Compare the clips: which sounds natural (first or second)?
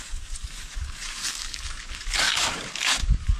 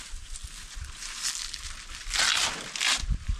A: second